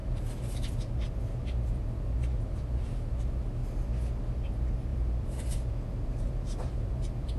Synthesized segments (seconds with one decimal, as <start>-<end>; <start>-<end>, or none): 0.0-3.6; 4.3-7.4